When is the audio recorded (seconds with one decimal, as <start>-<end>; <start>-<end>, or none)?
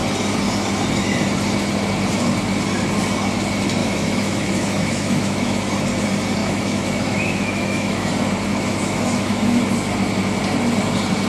0.0-3.8; 5.7-6.4; 8.1-8.5; 9.6-11.3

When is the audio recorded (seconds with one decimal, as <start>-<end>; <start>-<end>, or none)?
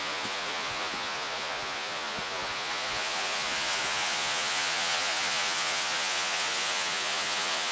none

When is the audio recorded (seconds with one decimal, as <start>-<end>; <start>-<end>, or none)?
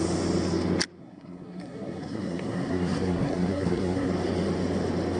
0.0-1.0; 4.1-5.2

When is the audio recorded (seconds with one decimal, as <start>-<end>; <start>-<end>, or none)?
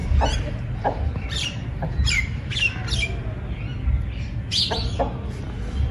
2.5-5.9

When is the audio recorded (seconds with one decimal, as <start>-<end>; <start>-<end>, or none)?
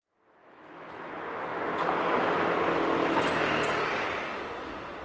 0.0-0.4; 1.1-5.0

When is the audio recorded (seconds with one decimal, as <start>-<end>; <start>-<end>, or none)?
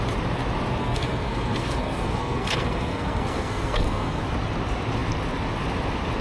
0.0-0.8; 4.2-6.2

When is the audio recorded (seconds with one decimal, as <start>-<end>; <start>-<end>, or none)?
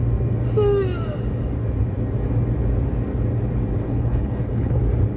0.0-3.8; 4.8-5.2